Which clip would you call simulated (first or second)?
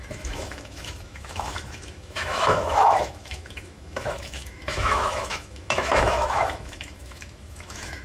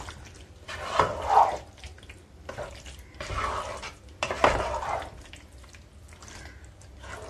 first